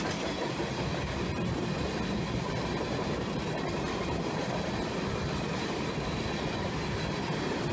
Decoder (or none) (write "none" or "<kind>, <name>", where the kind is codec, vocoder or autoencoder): none